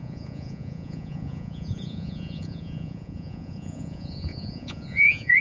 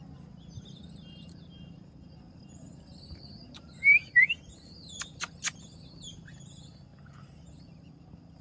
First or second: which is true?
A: second